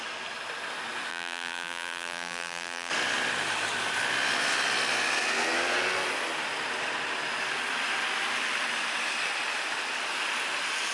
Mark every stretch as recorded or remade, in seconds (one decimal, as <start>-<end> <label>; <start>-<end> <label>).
0.0-1.1 recorded; 1.1-2.9 remade; 2.9-10.9 recorded